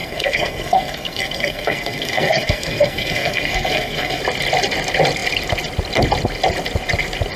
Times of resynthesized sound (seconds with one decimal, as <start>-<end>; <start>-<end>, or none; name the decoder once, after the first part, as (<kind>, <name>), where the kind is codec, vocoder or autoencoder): 0.0-4.2 (codec, SNAC)